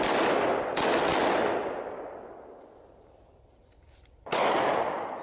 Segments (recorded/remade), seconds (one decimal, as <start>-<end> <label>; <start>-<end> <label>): 0.0-5.2 recorded